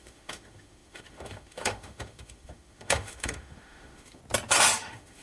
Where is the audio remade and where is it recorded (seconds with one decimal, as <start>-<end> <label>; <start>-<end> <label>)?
0.0-4.2 remade; 4.2-4.8 recorded; 4.8-5.2 remade